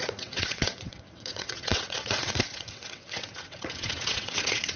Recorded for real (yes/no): no